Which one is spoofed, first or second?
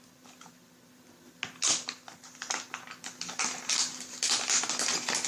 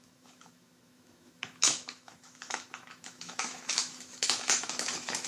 second